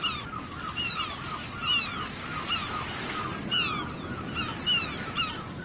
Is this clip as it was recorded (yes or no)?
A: yes